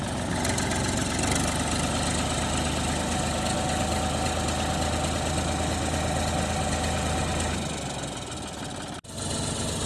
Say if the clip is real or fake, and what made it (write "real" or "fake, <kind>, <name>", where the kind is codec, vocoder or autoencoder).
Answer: real